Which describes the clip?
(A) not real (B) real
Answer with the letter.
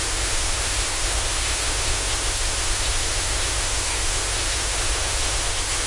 A